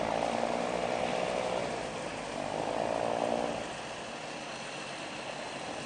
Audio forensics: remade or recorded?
recorded